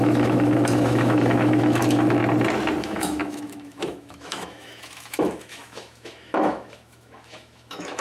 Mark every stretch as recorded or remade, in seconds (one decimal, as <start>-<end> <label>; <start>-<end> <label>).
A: 0.0-2.2 remade; 2.2-2.8 recorded; 2.8-8.0 remade